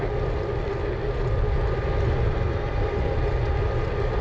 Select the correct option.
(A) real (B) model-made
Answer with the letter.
A